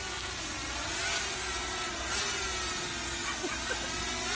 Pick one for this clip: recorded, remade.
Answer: recorded